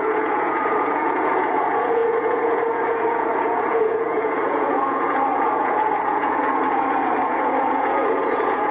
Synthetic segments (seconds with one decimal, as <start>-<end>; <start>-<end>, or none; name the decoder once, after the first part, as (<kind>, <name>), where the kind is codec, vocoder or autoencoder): 0.0-8.7 (vocoder, Vocos)